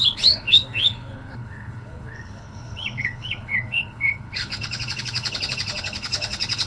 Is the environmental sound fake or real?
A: fake